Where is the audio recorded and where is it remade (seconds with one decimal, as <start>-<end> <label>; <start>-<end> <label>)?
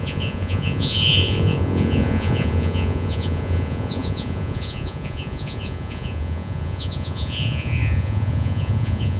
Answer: 0.0-9.2 remade